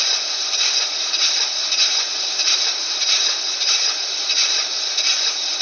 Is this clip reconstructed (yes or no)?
no